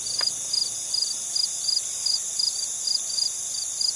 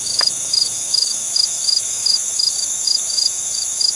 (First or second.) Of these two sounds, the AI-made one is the second